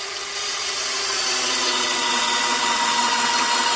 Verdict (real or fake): fake